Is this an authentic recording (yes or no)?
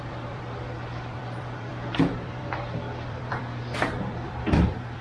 no